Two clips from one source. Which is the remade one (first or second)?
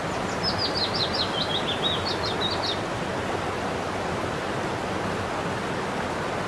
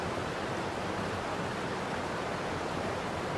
second